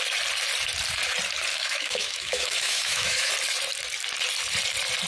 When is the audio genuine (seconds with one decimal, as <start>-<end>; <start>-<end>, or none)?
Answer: 0.0-1.5; 3.3-5.1